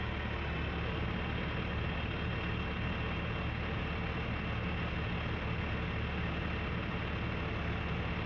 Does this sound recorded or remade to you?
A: recorded